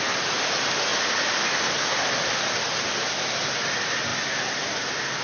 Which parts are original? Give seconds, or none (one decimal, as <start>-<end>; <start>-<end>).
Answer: 0.0-5.2